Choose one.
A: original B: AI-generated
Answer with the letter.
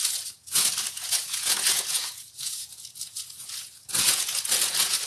B